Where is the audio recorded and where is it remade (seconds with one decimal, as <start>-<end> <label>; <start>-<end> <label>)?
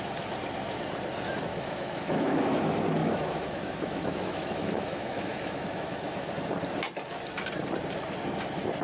0.0-1.5 recorded; 1.5-2.5 remade; 2.5-3.0 recorded; 3.0-6.3 remade; 6.3-8.8 recorded